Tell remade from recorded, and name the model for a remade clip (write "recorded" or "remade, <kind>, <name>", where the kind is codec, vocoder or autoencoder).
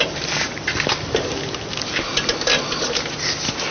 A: recorded